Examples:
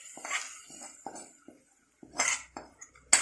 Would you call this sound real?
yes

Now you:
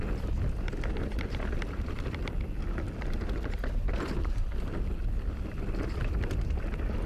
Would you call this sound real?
yes